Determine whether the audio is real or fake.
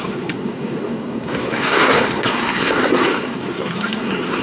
fake